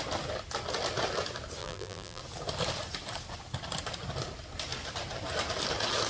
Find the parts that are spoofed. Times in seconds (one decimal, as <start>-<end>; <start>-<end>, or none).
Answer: 1.6-2.2